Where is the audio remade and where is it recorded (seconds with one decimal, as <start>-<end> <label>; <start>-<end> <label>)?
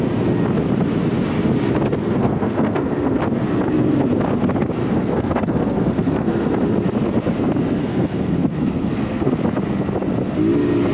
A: 0.0-2.0 recorded; 2.0-3.2 remade; 3.2-4.8 recorded; 4.8-6.5 remade; 6.5-7.8 recorded; 7.8-9.3 remade; 9.3-10.9 recorded